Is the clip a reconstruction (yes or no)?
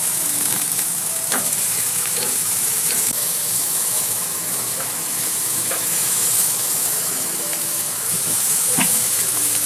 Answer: yes